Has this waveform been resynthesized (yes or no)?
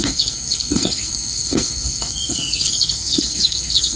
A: yes